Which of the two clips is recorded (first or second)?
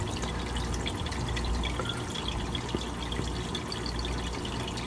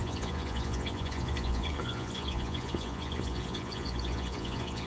first